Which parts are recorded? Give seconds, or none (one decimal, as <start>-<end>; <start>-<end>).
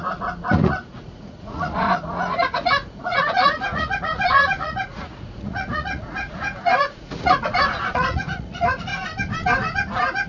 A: 8.9-10.3